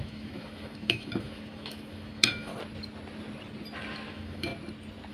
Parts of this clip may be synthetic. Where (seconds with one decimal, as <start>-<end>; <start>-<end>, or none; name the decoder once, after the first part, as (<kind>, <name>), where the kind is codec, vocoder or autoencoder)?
0.0-2.5 (autoencoder, DAC-VAE); 4.1-4.5